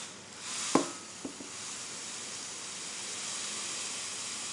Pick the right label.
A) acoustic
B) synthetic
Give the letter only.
A